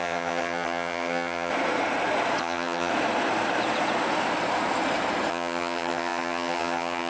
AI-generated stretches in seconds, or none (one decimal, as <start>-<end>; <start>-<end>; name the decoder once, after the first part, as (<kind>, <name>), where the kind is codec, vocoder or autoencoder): 0.0-1.5 (vocoder, HiFi-GAN); 2.4-2.9; 5.3-7.1